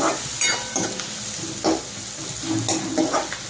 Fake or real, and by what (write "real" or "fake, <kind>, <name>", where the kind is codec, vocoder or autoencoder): real